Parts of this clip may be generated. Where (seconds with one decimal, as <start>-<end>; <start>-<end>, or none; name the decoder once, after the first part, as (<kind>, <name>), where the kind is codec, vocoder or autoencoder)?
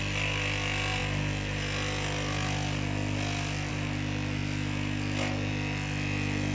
none